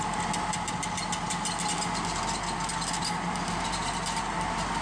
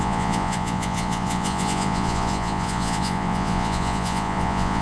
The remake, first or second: second